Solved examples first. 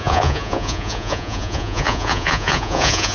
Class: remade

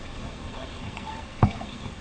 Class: remade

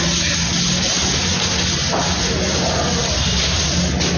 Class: recorded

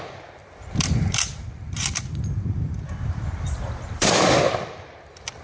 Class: remade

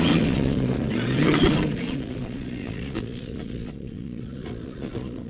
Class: remade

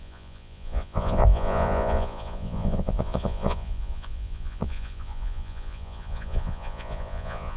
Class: remade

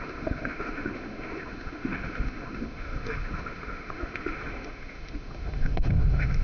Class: remade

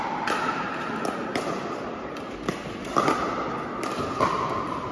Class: recorded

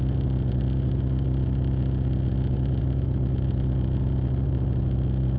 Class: recorded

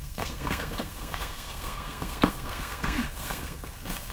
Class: remade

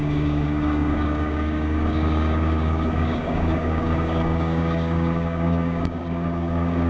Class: remade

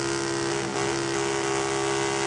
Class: recorded